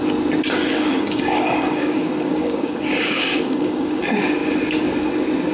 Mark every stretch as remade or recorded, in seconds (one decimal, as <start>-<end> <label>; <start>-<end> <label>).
0.0-0.7 recorded; 0.7-4.0 remade; 4.0-5.5 recorded